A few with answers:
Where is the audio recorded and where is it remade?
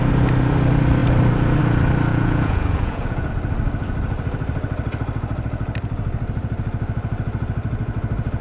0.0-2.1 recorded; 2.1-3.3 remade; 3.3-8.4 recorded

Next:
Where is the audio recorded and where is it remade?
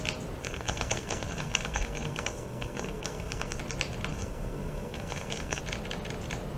0.0-0.4 recorded; 0.4-3.6 remade; 3.6-4.1 recorded; 4.1-5.6 remade; 5.6-6.6 recorded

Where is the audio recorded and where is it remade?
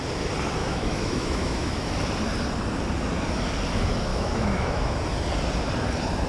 0.0-0.6 recorded; 0.6-1.9 remade; 1.9-4.1 recorded; 4.1-5.0 remade; 5.0-6.3 recorded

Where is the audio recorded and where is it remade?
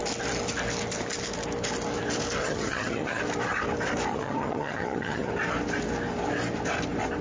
0.0-2.4 recorded; 2.4-3.2 remade; 3.2-4.1 recorded; 4.1-5.3 remade; 5.3-7.2 recorded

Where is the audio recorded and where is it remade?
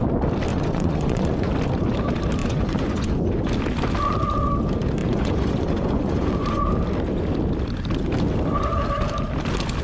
0.0-0.5 recorded; 0.5-1.5 remade; 1.5-2.4 recorded; 2.4-3.1 remade; 3.1-5.0 recorded; 5.0-6.6 remade; 6.6-9.8 recorded